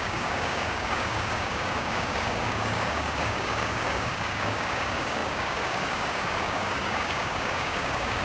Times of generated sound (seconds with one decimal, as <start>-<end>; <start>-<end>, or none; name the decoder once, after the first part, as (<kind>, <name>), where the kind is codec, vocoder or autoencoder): 0.0-8.2 (codec, DAC)